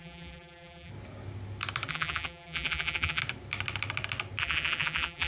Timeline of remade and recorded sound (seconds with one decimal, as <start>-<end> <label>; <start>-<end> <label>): 0.0-0.9 remade; 0.9-1.9 recorded; 1.9-3.2 remade; 3.2-4.4 recorded; 4.4-5.3 remade